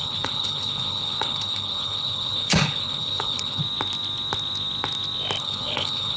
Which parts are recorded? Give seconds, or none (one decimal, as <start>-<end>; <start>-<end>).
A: 3.6-5.4